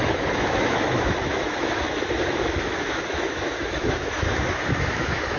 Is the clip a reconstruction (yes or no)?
yes